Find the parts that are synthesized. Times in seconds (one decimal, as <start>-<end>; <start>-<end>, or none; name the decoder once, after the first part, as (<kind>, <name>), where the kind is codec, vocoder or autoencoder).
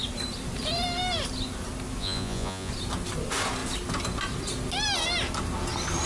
2.0-2.7 (vocoder, Vocos)